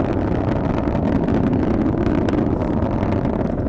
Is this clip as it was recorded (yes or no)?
yes